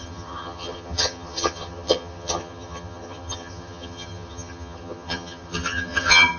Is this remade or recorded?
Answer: remade